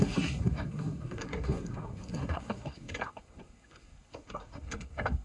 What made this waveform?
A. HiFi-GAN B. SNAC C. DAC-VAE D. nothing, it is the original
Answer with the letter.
B